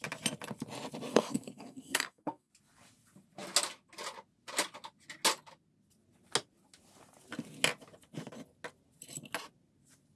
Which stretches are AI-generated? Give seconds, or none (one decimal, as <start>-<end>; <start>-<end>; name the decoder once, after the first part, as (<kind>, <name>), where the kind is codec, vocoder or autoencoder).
1.1-2.5 (codec, SNAC)